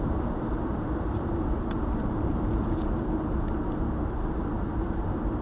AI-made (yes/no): yes